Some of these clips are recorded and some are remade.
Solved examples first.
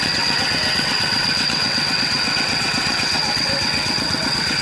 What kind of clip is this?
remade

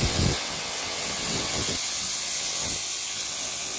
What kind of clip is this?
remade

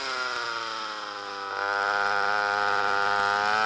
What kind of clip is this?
recorded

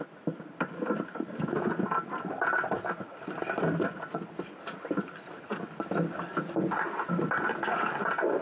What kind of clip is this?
recorded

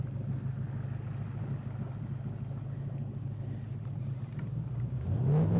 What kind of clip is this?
recorded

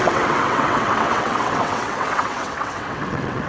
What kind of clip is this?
remade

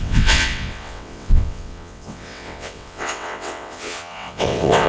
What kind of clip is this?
remade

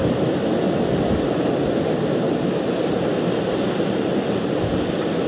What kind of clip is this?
recorded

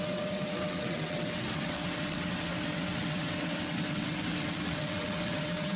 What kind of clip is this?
remade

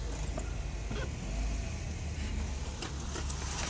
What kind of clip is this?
recorded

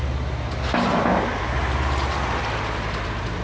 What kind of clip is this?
recorded